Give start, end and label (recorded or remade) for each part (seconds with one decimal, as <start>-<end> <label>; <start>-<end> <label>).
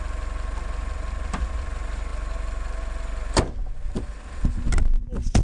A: 0.0-5.4 recorded